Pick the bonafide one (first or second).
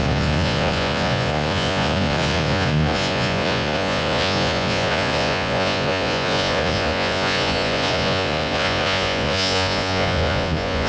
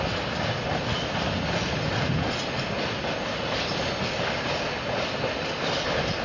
second